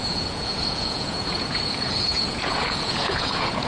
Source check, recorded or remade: remade